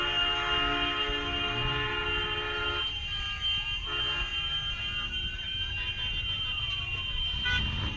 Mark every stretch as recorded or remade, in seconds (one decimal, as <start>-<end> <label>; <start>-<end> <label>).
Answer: 0.0-8.0 recorded